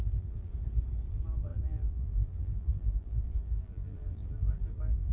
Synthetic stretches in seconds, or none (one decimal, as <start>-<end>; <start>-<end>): 0.0-0.5; 1.1-5.1